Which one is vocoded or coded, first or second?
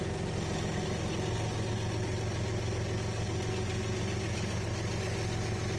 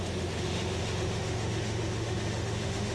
second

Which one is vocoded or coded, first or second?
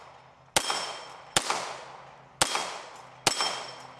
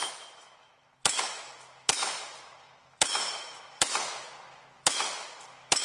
second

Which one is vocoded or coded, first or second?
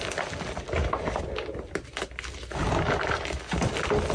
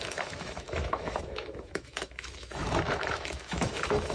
second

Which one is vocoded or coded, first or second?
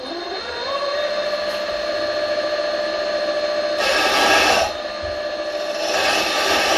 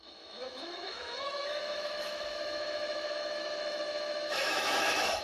second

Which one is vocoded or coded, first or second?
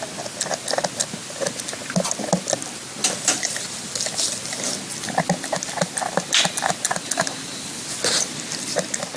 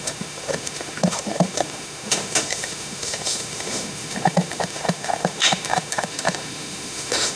second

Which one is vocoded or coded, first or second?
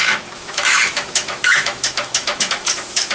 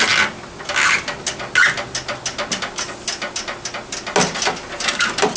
first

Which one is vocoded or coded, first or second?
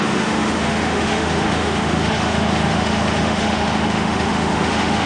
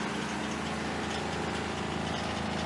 first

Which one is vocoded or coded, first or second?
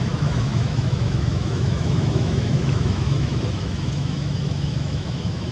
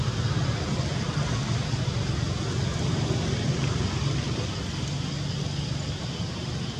first